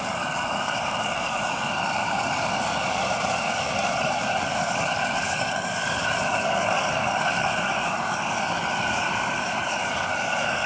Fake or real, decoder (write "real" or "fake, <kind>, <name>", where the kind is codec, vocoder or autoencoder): fake, codec, DAC